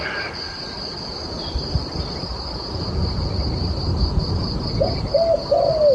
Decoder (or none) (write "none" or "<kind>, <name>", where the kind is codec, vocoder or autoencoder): none